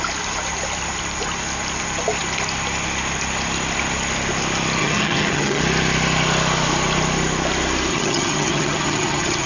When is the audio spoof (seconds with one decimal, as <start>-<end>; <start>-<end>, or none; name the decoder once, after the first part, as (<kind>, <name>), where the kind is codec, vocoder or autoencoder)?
4.8-5.6 (vocoder, HiFi-GAN); 7.9-9.5